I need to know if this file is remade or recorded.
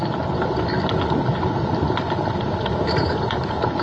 recorded